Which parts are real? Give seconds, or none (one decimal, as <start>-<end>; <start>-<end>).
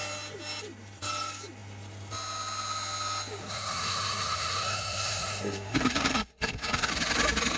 0.0-3.4; 6.9-7.6